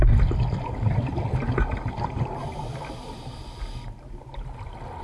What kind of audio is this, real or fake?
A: real